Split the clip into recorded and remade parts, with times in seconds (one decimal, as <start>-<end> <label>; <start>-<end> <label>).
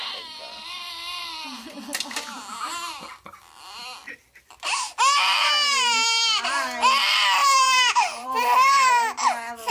0.0-1.8 remade; 1.8-4.0 recorded; 4.0-4.8 remade; 4.8-7.4 recorded; 7.4-8.9 remade; 8.9-9.7 recorded